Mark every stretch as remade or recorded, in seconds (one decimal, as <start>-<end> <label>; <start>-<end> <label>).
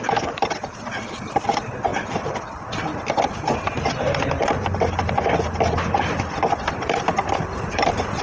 0.0-1.9 remade; 1.9-6.8 recorded; 6.8-8.2 remade